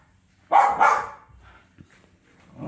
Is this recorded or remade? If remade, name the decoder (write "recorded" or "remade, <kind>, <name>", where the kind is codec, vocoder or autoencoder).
recorded